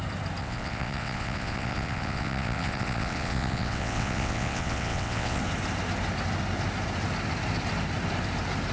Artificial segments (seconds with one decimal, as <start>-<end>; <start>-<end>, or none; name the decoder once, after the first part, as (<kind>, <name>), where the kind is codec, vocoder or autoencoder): 0.4-5.4 (vocoder, WaveNeXt)